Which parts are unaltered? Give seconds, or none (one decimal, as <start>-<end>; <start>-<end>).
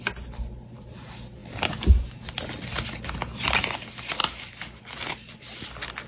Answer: 0.0-6.1